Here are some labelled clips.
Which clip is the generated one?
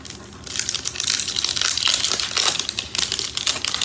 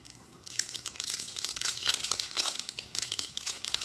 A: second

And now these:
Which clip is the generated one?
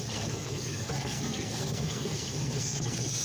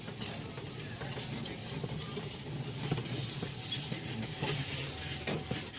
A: first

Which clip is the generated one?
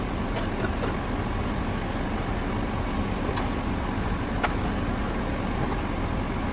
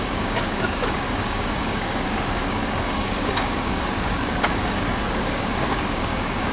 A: second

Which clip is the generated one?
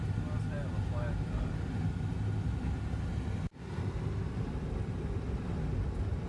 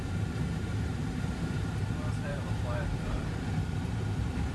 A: second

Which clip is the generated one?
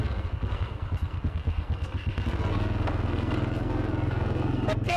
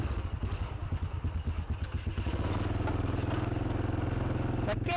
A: first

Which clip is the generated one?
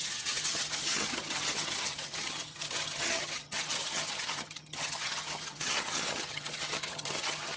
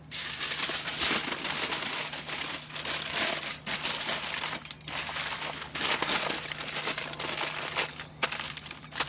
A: first